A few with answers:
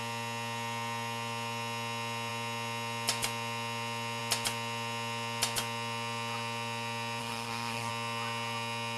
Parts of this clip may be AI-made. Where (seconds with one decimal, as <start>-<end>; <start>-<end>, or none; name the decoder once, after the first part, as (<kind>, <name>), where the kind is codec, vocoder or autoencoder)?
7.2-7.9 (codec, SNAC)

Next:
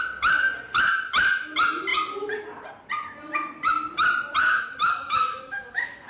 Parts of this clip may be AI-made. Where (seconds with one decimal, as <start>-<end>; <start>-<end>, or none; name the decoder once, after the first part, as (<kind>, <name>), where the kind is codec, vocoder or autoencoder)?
4.4-6.1 (autoencoder, DAC-VAE)

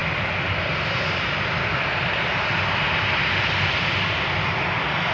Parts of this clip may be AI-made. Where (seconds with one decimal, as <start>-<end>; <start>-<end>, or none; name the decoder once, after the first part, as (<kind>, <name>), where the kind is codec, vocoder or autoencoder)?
none

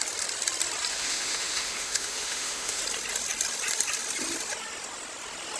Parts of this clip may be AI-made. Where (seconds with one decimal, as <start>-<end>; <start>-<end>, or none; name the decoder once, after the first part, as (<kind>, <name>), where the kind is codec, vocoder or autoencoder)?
0.9-2.8 (autoencoder, DAC-VAE)